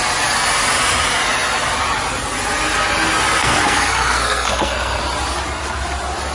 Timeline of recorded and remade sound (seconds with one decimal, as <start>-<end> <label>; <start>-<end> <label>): 0.0-3.4 recorded; 3.4-5.0 remade; 5.0-6.3 recorded